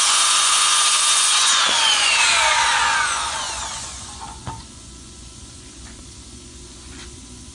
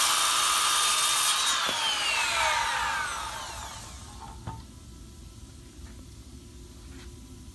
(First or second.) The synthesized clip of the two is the first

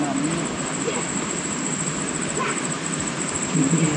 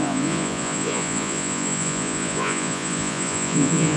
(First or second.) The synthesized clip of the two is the second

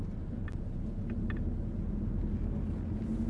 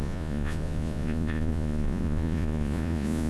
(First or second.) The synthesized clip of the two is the second